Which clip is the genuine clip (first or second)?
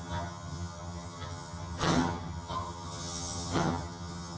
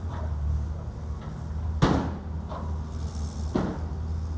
second